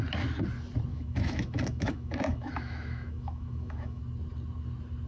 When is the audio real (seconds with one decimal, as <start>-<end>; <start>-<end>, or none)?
0.0-0.9; 4.0-5.1